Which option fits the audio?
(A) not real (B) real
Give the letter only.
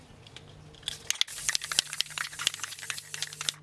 B